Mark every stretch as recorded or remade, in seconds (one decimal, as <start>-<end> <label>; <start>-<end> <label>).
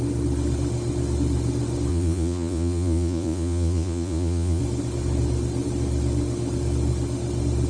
0.0-1.9 recorded; 1.9-4.6 remade; 4.6-7.7 recorded